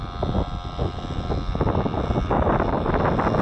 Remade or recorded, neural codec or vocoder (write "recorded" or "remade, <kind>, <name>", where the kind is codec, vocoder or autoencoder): recorded